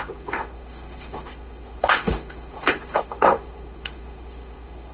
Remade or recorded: remade